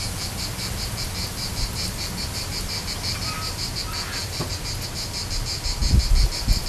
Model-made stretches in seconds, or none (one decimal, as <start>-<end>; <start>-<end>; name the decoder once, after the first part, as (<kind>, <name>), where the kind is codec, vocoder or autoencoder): none